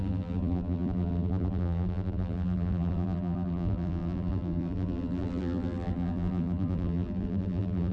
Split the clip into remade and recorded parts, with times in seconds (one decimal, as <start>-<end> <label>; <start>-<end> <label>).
0.0-7.9 remade